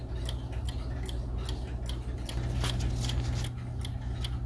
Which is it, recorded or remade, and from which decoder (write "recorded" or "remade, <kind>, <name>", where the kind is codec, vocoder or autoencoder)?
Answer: recorded